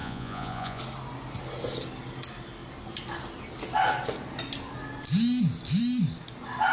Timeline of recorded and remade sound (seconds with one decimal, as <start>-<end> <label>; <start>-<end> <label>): 0.0-0.8 remade; 0.8-6.7 recorded